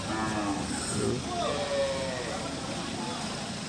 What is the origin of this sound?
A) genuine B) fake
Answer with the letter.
A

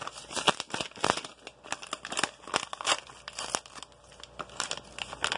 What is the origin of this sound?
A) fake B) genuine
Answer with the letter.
B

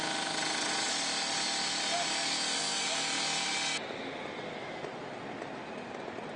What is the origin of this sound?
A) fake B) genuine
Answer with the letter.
B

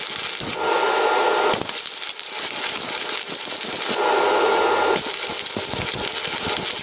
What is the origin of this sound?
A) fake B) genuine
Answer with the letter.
B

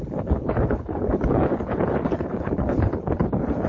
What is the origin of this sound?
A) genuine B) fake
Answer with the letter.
B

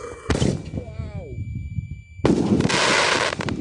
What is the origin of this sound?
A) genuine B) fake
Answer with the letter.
A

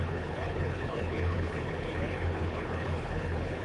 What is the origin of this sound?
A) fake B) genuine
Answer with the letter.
A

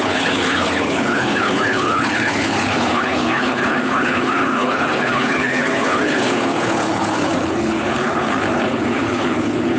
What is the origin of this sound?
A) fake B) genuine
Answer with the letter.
A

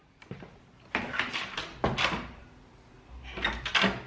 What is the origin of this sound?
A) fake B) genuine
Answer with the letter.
B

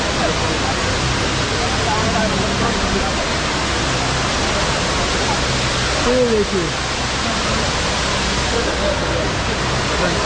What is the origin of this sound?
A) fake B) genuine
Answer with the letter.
B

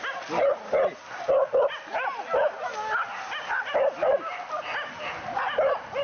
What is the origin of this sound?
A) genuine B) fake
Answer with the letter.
A